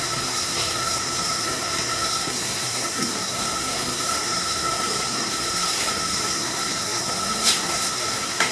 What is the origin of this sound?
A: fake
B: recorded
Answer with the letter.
A